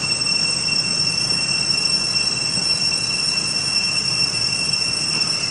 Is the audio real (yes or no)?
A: yes